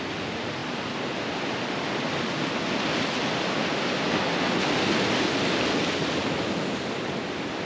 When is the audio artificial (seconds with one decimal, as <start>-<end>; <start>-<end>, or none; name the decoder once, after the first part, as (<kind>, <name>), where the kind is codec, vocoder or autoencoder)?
none